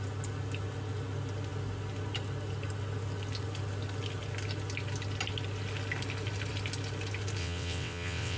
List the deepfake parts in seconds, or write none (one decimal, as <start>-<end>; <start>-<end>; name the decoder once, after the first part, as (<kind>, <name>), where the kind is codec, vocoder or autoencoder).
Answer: 7.4-8.4 (vocoder, WaveNeXt)